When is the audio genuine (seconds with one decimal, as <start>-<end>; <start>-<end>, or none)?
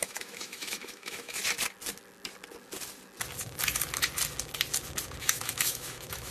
1.4-5.2